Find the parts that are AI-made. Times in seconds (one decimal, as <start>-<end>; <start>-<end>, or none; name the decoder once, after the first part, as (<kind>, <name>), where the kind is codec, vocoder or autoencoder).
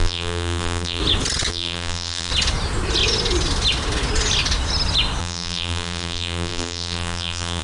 0.0-1.0 (vocoder, BigVGAN v2); 1.5-2.3; 5.2-7.6